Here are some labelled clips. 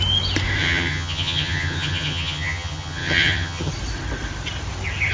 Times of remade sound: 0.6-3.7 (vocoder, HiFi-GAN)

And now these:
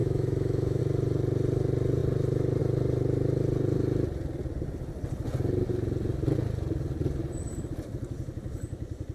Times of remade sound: 0.0-0.8 (autoencoder, DAC-VAE)

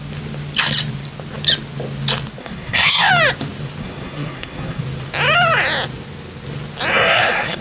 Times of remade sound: 2.4-3.1 (codec, SNAC); 3.8-4.8; 6.9-7.6